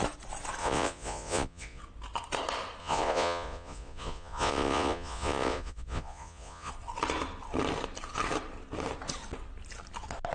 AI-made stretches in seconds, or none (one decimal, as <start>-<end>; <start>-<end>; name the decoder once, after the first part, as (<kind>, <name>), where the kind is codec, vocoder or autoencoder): 0.6-1.8 (vocoder, Vocos); 2.8-6.7